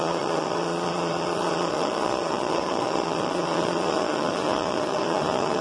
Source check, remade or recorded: remade